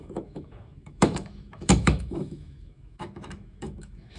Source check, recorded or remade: remade